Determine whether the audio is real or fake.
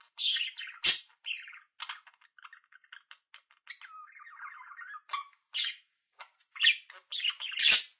real